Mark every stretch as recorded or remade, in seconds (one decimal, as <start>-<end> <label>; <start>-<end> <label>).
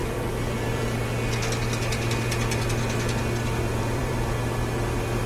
0.0-3.7 recorded; 3.7-4.3 remade; 4.3-5.3 recorded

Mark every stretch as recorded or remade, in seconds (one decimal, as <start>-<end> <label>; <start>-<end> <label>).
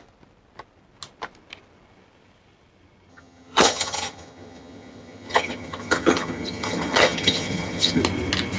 0.0-3.1 recorded; 3.1-8.0 remade; 8.0-8.6 recorded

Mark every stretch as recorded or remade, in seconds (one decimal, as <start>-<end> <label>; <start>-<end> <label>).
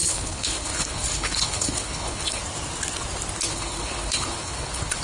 0.0-2.4 remade; 2.4-3.5 recorded; 3.5-5.0 remade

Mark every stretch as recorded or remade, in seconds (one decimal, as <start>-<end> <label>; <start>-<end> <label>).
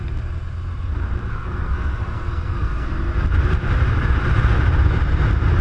0.0-1.3 recorded; 1.3-2.9 remade; 2.9-5.6 recorded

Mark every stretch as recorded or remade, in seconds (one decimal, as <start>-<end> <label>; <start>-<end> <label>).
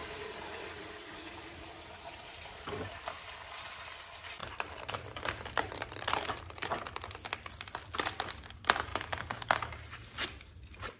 0.0-2.7 remade; 2.7-4.4 recorded; 4.4-6.7 remade; 6.7-8.9 recorded; 8.9-9.4 remade; 9.4-11.0 recorded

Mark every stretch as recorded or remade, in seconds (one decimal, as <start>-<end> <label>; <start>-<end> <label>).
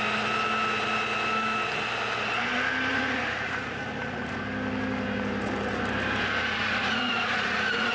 0.0-2.9 recorded; 2.9-4.4 remade; 4.4-6.4 recorded; 6.4-7.9 remade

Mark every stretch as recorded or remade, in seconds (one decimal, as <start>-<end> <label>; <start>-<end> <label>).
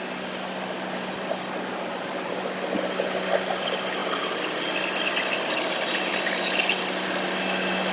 0.0-7.9 recorded